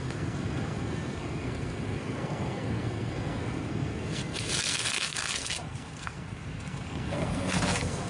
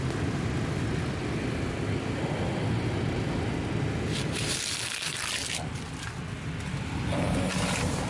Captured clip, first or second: second